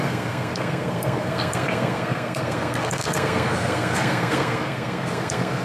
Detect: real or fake fake